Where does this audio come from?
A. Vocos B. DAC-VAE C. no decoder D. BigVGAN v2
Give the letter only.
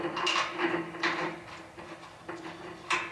D